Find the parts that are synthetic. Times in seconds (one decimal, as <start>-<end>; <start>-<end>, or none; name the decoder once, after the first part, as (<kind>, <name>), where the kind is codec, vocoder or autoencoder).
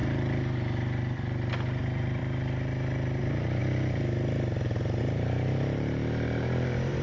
1.8-2.2 (vocoder, BigVGAN v2); 3.2-3.6; 5.0-7.0